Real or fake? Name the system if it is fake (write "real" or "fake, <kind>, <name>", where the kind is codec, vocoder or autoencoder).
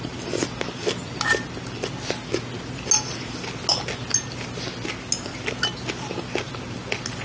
real